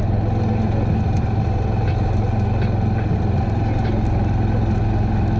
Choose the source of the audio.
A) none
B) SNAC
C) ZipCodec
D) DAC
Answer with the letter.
A